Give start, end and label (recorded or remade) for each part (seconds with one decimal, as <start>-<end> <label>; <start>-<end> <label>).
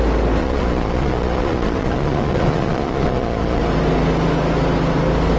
0.0-0.4 recorded; 0.4-3.6 remade; 3.6-5.4 recorded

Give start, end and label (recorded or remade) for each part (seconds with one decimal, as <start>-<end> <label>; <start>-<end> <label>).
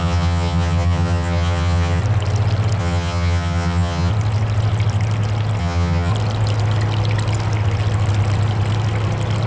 0.0-2.0 remade; 2.0-2.8 recorded; 2.8-4.1 remade; 4.1-5.6 recorded; 5.6-6.1 remade; 6.1-9.5 recorded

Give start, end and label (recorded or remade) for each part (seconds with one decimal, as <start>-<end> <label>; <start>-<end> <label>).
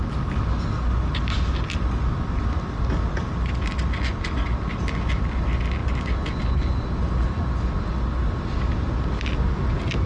0.0-10.1 recorded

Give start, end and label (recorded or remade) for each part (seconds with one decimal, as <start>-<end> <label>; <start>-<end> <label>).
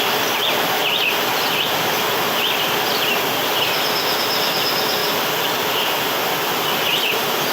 0.0-5.0 recorded; 5.0-6.1 remade; 6.1-7.5 recorded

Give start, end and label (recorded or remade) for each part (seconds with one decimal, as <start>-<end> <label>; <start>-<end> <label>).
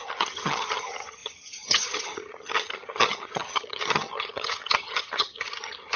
0.0-6.0 remade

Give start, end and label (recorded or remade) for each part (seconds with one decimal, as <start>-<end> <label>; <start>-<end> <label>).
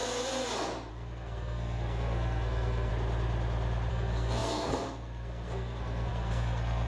0.0-0.9 recorded; 0.9-2.9 remade; 2.9-3.9 recorded; 3.9-6.9 remade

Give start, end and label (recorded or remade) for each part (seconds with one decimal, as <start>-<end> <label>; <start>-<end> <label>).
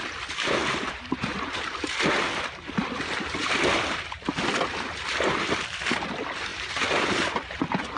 0.0-0.6 recorded; 0.6-2.0 remade; 2.0-6.5 recorded; 6.5-7.6 remade; 7.6-8.0 recorded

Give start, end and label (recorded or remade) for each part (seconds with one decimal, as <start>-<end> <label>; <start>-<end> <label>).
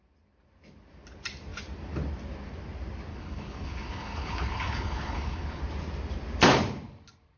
0.0-3.1 recorded; 3.1-5.6 remade; 5.6-7.4 recorded